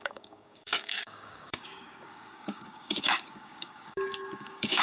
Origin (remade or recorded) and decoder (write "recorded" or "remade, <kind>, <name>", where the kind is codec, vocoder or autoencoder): remade, codec, DAC